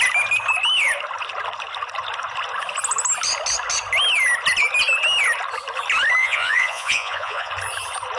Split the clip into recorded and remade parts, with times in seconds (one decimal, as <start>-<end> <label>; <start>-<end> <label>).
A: 0.0-6.2 recorded; 6.2-7.5 remade; 7.5-8.2 recorded